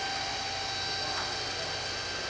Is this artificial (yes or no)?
no